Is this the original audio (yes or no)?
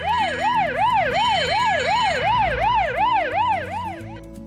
yes